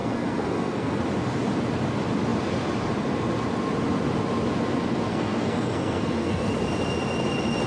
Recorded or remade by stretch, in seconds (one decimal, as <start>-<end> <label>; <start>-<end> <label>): 0.0-1.0 remade; 1.0-5.1 recorded; 5.1-6.5 remade; 6.5-7.7 recorded